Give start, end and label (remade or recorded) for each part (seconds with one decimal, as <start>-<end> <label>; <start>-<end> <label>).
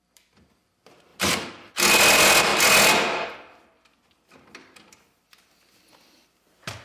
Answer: 0.0-6.8 recorded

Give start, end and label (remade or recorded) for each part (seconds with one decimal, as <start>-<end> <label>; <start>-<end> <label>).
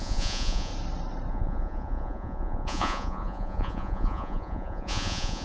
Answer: 0.0-0.7 remade; 0.7-1.3 recorded; 1.3-5.4 remade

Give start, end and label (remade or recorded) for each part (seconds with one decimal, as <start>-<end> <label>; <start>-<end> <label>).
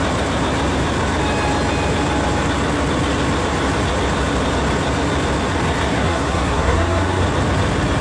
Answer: 0.0-5.9 recorded; 5.9-7.2 remade; 7.2-8.0 recorded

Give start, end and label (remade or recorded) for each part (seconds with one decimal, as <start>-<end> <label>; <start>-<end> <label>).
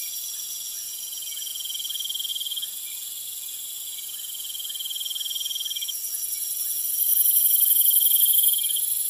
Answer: 0.0-9.1 recorded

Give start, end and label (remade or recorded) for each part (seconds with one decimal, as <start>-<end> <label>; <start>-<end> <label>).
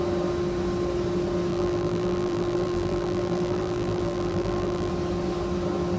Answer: 0.0-1.5 recorded; 1.5-4.9 remade; 4.9-6.0 recorded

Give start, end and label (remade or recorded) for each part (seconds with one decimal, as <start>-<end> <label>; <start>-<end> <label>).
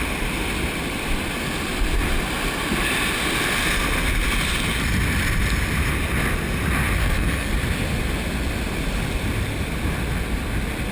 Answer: 0.0-7.0 recorded; 7.0-7.5 remade; 7.5-10.9 recorded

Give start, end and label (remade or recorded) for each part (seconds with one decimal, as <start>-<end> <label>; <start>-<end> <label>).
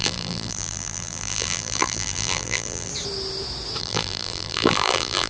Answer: 0.0-2.9 remade; 2.9-3.8 recorded; 3.8-5.3 remade